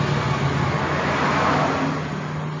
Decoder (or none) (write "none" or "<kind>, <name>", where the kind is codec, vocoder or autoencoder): none